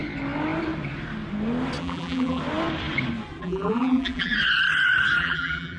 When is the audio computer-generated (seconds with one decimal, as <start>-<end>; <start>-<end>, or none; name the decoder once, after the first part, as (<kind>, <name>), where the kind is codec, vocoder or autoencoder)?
1.8-2.4 (vocoder, BigVGAN v2); 3.4-4.3; 5.2-5.8